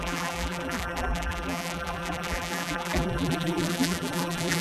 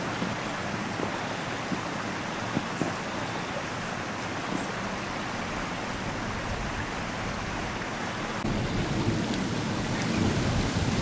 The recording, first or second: second